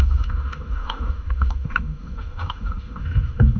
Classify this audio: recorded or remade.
remade